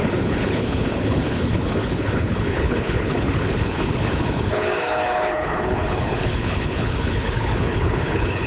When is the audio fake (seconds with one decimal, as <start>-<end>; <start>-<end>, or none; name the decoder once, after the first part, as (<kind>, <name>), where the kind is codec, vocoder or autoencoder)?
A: 0.0-8.5 (codec, HILCodec)